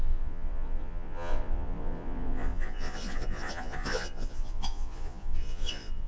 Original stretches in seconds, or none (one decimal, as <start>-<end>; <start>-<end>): none